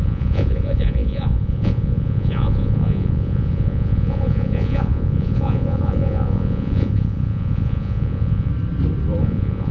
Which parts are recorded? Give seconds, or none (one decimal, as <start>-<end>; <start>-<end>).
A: 8.5-9.2